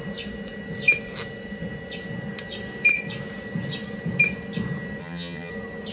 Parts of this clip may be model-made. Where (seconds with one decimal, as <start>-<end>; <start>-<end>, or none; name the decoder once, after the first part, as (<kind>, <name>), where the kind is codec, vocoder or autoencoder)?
5.0-5.5 (vocoder, HiFi-GAN)